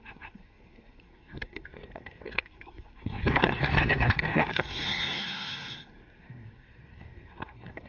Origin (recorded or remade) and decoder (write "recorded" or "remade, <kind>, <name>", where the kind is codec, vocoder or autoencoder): remade, codec, SNAC